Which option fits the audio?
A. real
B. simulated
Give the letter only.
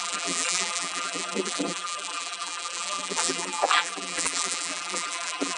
B